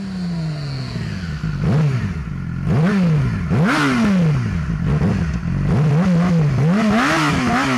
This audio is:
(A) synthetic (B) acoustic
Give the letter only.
B